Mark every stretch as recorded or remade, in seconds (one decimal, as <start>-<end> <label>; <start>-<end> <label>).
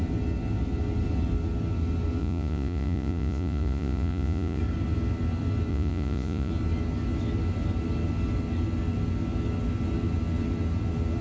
0.0-2.2 recorded; 2.2-4.6 remade; 4.6-5.7 recorded; 5.7-6.5 remade; 6.5-11.2 recorded